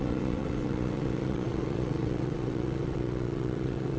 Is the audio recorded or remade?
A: remade